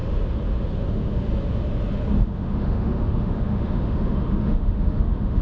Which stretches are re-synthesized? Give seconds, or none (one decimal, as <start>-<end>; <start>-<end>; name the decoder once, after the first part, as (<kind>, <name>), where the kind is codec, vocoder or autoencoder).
0.9-1.3 (autoencoder, DAC-VAE); 2.2-5.4